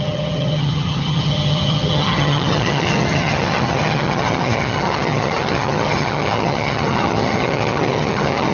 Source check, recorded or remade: remade